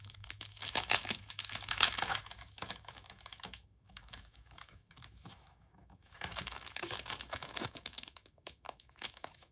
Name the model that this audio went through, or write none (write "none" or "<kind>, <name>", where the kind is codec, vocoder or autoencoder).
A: autoencoder, DAC-VAE